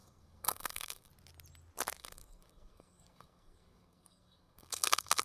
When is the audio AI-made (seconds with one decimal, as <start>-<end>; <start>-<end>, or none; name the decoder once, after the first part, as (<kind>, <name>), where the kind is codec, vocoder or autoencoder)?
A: 0.0-1.1 (codec, SNAC); 2.0-5.2